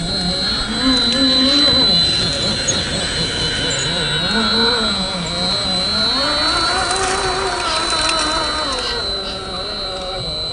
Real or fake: real